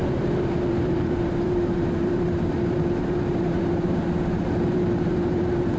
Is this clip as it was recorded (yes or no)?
no